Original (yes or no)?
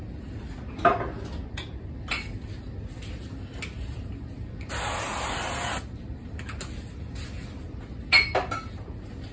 yes